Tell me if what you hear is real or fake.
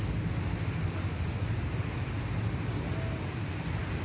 real